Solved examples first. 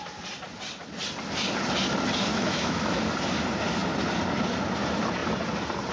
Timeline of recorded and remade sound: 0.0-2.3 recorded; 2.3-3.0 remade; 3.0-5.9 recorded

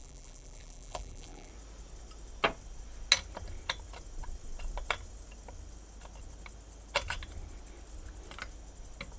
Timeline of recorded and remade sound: 0.0-1.5 remade; 1.5-9.2 recorded

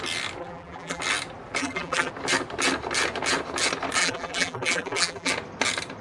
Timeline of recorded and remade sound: 0.0-0.4 recorded; 0.4-1.0 remade; 1.0-1.6 recorded; 1.6-2.1 remade; 2.1-4.0 recorded; 4.0-5.3 remade; 5.3-6.0 recorded

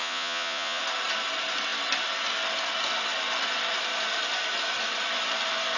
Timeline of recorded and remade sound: 0.0-0.8 remade; 0.8-5.8 recorded